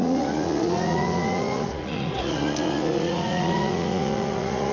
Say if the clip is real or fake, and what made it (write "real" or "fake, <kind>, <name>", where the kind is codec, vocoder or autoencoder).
fake, vocoder, Vocos